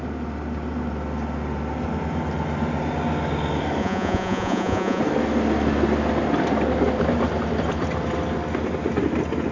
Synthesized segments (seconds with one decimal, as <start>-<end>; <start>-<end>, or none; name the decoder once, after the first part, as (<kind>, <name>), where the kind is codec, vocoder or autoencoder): 3.8-5.0 (vocoder, Vocos)

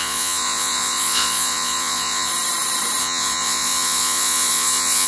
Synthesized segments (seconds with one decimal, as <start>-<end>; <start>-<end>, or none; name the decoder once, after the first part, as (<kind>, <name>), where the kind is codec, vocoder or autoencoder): 0.0-2.3 (vocoder, Vocos); 3.0-5.1

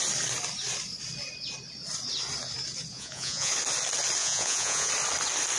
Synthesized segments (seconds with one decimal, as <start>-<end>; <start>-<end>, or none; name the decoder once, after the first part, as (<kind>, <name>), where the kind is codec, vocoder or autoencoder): 2.9-3.5 (vocoder, Vocos); 4.2-4.9

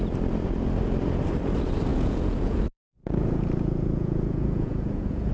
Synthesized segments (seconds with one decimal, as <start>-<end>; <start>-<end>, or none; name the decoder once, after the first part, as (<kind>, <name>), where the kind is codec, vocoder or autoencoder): 1.9-5.3 (vocoder, Vocos)

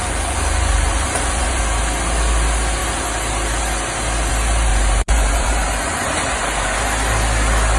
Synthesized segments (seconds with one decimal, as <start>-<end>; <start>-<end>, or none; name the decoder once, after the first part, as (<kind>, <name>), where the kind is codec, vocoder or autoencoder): 0.0-1.6 (vocoder, Vocos); 4.7-6.8